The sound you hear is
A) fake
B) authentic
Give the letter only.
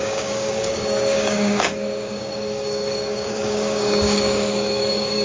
A